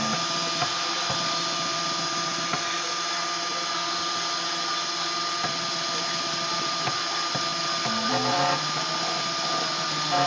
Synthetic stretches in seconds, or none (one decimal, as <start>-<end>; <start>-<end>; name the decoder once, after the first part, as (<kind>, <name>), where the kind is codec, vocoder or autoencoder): none